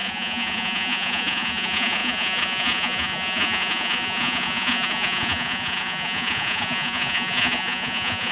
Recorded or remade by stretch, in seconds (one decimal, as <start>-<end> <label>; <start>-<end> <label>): 0.0-8.3 remade